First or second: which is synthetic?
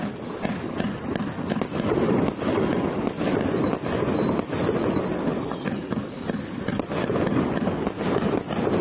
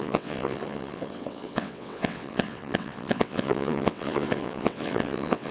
second